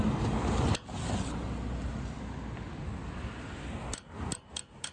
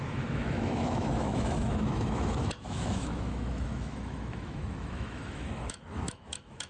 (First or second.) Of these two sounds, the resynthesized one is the second